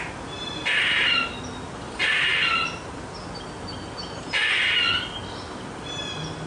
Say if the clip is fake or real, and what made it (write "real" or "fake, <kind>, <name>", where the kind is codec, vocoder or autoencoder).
real